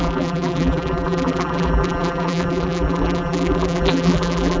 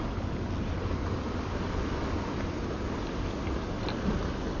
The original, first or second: second